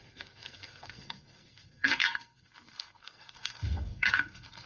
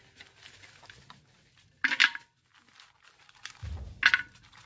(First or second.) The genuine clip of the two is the second